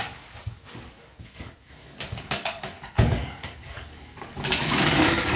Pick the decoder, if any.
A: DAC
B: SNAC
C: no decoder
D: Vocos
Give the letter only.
A